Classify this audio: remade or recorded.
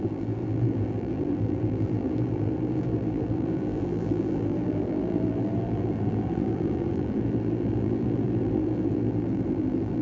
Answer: remade